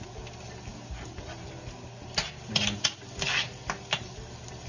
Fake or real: real